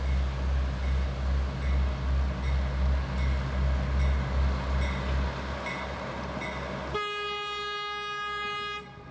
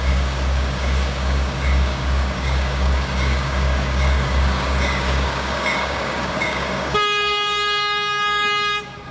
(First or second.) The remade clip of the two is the second